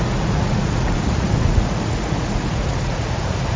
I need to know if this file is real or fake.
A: fake